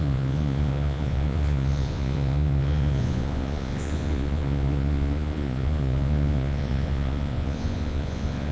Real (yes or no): no